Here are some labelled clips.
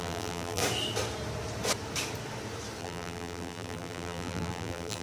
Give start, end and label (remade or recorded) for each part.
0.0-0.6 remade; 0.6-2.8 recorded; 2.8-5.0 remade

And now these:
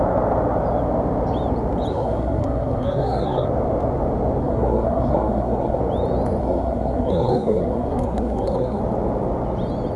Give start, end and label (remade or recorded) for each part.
0.0-1.9 recorded; 1.9-3.5 remade; 3.5-4.4 recorded; 4.4-5.8 remade; 5.8-6.4 recorded; 6.4-8.8 remade; 8.8-10.0 recorded

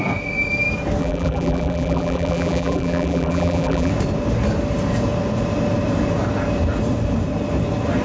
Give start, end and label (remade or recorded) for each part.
0.0-1.0 recorded; 1.0-3.9 remade; 3.9-8.0 recorded

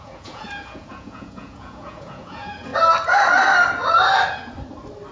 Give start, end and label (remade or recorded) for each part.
0.0-2.7 remade; 2.7-5.1 recorded